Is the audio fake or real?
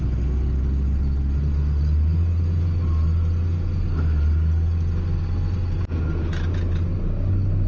real